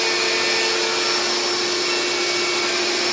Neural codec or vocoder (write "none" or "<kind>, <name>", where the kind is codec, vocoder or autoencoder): none